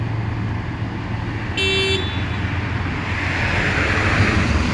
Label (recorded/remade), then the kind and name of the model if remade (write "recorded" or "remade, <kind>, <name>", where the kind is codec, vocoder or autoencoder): recorded